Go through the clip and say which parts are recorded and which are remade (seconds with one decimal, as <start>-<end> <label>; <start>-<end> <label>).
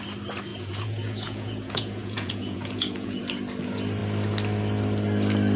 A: 0.0-0.5 recorded; 0.5-3.2 remade; 3.2-5.6 recorded